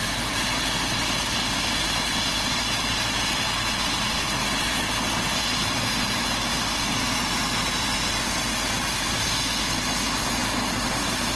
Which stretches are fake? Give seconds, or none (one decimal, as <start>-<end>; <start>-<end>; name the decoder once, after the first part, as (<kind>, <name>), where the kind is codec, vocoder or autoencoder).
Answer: none